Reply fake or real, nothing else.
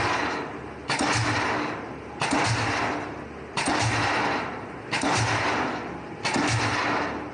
real